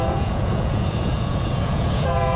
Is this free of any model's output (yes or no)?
no